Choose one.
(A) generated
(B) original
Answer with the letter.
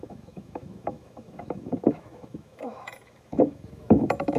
A